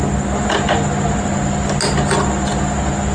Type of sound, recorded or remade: recorded